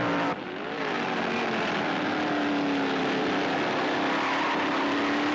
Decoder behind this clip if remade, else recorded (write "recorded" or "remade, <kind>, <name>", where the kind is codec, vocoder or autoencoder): recorded